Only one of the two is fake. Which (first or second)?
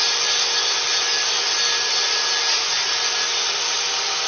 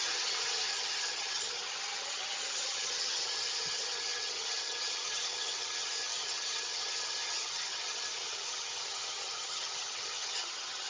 second